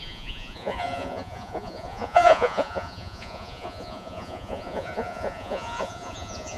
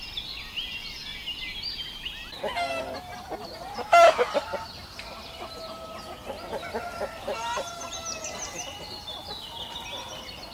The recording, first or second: second